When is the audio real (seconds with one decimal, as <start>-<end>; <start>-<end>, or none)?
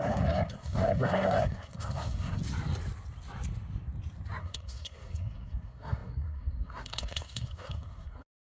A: 2.4-4.4